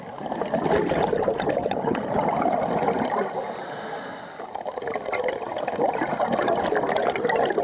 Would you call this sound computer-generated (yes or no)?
no